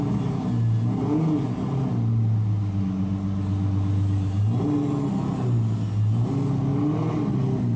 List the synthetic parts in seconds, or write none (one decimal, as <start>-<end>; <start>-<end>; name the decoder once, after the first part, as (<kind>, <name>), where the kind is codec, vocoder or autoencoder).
none